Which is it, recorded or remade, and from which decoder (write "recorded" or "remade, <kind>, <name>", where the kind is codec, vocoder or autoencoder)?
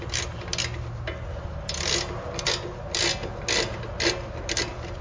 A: recorded